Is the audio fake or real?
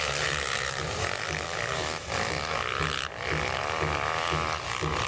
real